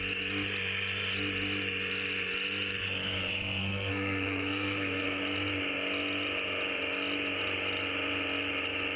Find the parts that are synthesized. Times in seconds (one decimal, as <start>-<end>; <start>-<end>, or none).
3.6-5.2